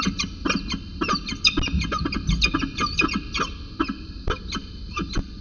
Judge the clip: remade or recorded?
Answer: recorded